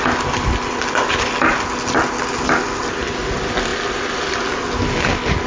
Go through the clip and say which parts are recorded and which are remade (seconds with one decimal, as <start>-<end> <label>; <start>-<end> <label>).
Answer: 0.0-5.5 recorded